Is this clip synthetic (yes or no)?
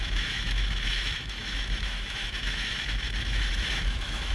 yes